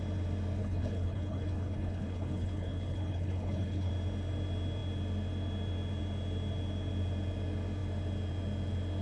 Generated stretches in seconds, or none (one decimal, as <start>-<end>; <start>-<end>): 0.6-3.9